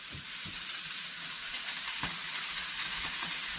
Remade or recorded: remade